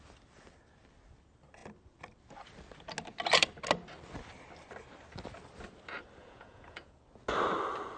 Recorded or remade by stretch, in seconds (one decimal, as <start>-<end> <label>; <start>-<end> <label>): 0.0-6.2 recorded; 6.2-7.0 remade; 7.0-8.0 recorded